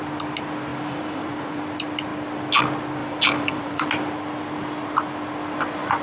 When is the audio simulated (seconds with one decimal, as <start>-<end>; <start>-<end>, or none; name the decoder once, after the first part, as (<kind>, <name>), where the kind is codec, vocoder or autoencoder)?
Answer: 0.7-1.6 (vocoder, BigVGAN v2); 3.0-3.8